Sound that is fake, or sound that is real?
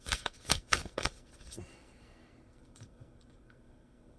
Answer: fake